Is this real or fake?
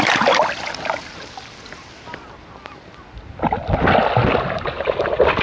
real